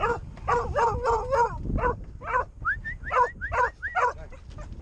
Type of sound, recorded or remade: recorded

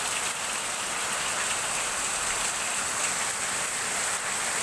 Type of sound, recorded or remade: recorded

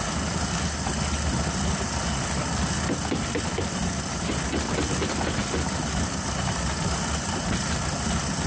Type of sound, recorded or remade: recorded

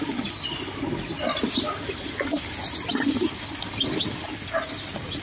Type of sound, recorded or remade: recorded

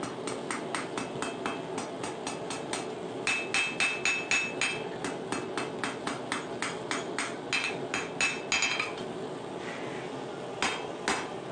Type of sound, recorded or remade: recorded